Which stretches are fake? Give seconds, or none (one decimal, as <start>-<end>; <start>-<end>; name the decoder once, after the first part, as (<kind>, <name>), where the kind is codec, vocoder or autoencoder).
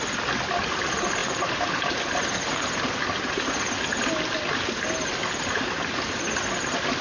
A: none